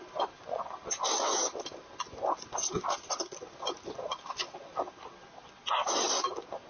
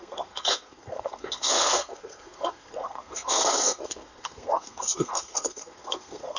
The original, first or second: first